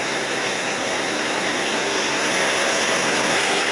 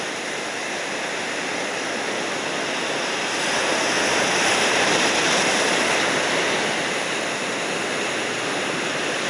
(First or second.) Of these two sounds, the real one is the second